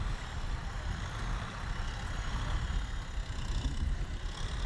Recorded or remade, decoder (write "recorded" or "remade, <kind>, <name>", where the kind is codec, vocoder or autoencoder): recorded